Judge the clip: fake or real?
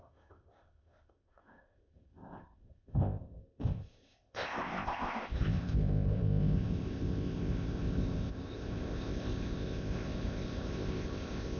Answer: fake